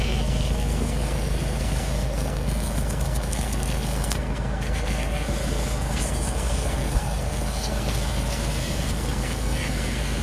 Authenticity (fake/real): fake